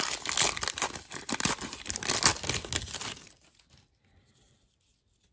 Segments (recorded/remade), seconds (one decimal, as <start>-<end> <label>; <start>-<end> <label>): 0.0-5.3 recorded